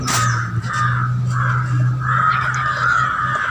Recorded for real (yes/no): yes